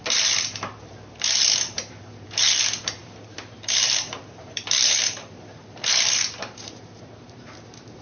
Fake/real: fake